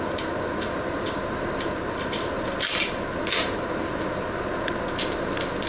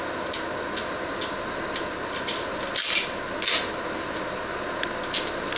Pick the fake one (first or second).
first